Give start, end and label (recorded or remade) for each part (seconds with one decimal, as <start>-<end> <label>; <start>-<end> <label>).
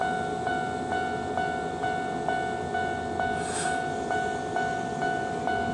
0.0-5.7 recorded